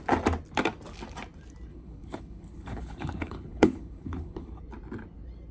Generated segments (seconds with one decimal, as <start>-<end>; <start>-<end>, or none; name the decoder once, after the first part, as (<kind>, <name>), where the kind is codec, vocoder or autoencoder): 1.7-4.6 (codec, HILCodec)